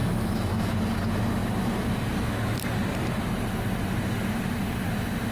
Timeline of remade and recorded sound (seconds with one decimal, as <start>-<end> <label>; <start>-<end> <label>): 0.0-0.7 remade; 0.7-5.3 recorded